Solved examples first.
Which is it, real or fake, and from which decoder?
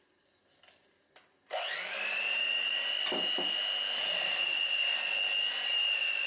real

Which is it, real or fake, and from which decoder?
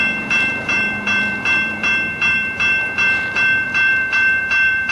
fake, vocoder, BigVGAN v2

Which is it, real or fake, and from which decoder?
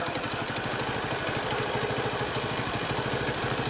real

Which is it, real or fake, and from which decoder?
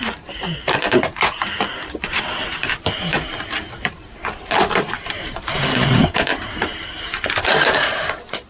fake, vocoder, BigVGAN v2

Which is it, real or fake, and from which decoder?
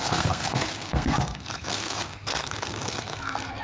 fake, codec, SNAC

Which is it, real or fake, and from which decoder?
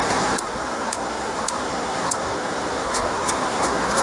fake, codec, SNAC